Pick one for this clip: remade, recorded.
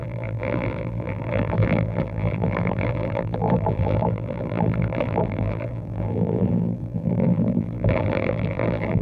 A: remade